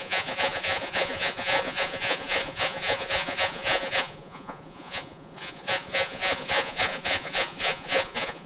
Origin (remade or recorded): remade